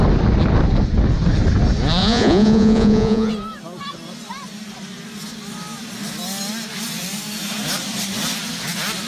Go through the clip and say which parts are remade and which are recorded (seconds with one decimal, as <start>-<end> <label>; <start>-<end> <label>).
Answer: 0.0-2.0 recorded; 2.0-3.3 remade; 3.3-9.1 recorded